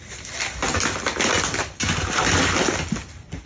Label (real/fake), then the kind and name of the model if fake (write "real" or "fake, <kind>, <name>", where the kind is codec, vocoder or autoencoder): real